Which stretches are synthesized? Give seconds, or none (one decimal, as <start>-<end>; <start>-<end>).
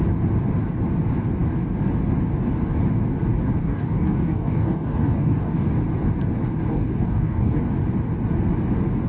3.6-5.7; 6.7-7.6